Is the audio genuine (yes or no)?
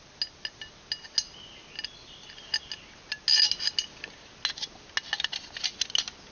yes